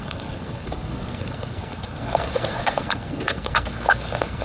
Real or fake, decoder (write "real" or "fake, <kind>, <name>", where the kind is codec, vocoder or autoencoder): fake, codec, SNAC